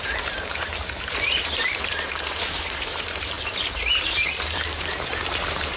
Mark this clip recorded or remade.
remade